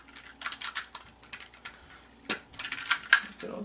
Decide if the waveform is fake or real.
real